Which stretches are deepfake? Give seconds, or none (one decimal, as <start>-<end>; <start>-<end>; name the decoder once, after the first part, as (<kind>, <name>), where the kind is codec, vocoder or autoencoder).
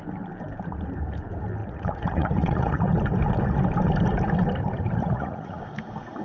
1.6-2.9 (vocoder, Vocos); 5.0-5.6